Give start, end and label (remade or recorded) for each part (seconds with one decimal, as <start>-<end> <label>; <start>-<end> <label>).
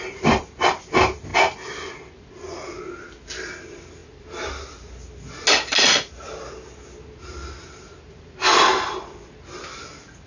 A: 0.0-10.3 recorded